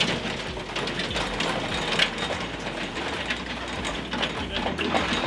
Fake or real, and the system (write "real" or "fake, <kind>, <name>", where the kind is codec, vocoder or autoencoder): real